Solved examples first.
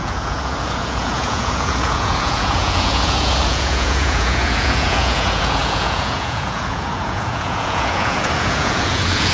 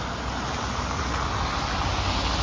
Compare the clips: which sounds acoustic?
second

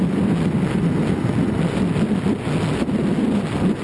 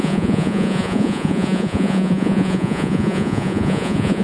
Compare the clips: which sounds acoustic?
first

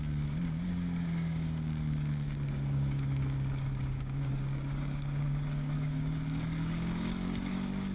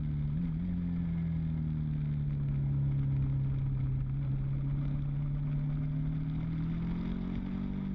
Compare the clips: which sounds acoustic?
second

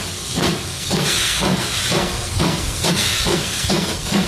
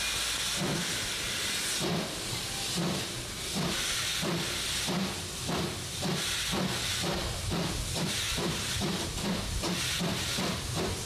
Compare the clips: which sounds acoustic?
second